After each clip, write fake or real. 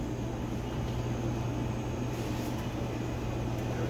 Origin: real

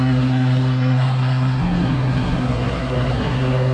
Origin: fake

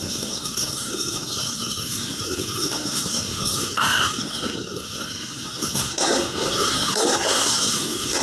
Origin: fake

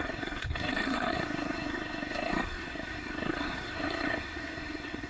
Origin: fake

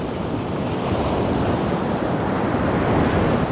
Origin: real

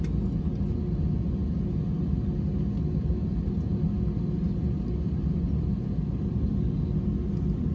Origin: real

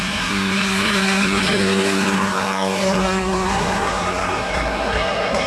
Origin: fake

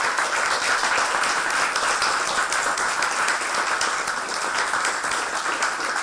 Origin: real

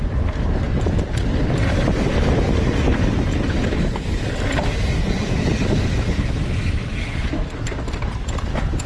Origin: real